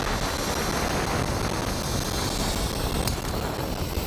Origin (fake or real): real